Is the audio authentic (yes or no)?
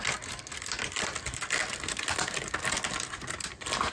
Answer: yes